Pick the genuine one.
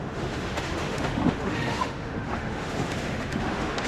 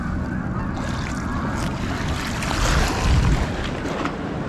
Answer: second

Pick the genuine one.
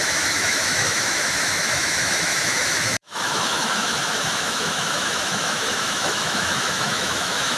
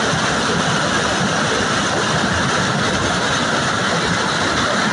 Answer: second